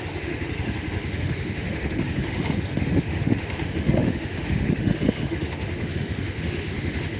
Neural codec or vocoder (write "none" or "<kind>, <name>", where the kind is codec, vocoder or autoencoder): autoencoder, DAC-VAE